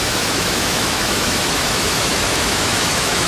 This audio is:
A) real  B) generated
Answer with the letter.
B